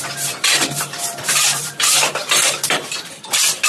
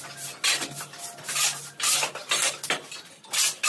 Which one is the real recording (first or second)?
second